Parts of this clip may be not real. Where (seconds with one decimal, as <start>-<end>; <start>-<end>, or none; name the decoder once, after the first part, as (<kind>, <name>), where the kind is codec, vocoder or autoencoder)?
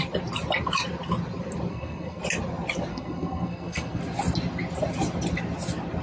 1.7-2.2 (codec, SNAC); 2.9-4.0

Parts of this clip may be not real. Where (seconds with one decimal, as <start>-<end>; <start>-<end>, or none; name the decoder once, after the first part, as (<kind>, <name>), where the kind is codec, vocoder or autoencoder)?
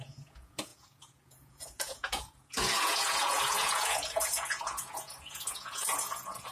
0.0-6.5 (vocoder, Vocos)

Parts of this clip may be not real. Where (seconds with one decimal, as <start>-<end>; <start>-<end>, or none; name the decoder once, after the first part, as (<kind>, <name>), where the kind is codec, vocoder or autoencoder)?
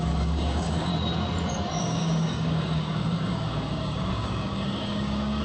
0.0-0.9 (codec, DAC); 1.8-5.4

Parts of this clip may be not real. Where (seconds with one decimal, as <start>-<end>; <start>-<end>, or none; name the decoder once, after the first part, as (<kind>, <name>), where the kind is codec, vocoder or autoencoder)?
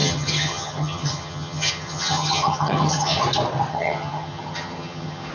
0.0-3.2 (vocoder, HiFi-GAN); 3.7-5.3